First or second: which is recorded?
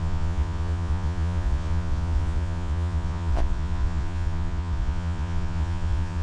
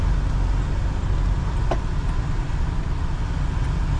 second